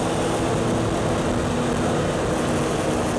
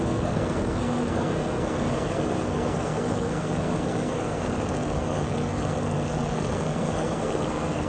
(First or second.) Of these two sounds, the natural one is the first